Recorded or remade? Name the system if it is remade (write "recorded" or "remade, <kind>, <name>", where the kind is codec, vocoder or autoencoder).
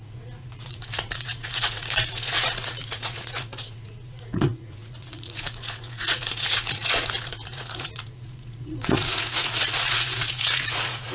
remade, vocoder, Vocos